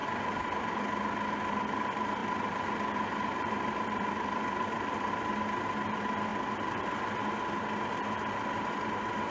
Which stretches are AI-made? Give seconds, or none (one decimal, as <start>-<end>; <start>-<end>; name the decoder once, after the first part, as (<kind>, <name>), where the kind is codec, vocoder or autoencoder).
0.0-0.7 (vocoder, BigVGAN v2); 2.2-5.1; 6.3-7.2